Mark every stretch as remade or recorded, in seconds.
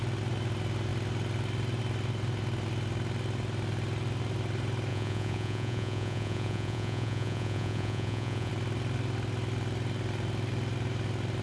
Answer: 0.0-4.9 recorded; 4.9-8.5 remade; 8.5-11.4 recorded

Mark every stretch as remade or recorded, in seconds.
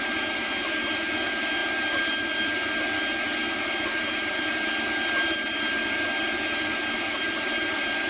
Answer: 0.0-8.1 recorded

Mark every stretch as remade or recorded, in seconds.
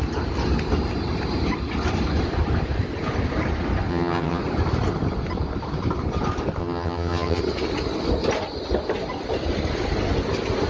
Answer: 0.0-3.9 recorded; 3.9-4.4 remade; 4.4-6.6 recorded; 6.6-7.4 remade; 7.4-10.7 recorded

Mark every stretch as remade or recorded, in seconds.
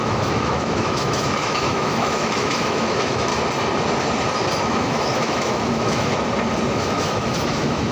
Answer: 0.0-3.3 remade; 3.3-4.6 recorded; 4.6-6.1 remade; 6.1-6.7 recorded; 6.7-7.9 remade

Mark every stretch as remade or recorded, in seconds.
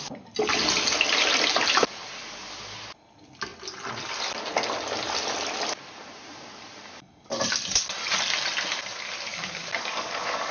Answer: 0.0-9.3 recorded; 9.3-10.5 remade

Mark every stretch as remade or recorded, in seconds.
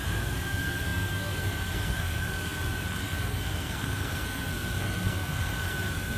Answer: 0.0-6.2 remade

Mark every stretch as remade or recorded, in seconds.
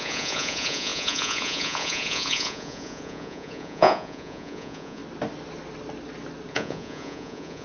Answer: 0.0-5.0 remade; 5.0-6.5 recorded; 6.5-7.6 remade